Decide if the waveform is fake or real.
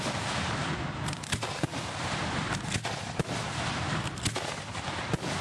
real